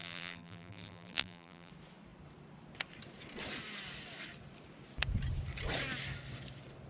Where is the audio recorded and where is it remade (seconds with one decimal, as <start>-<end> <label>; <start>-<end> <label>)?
0.0-1.7 remade; 1.7-6.9 recorded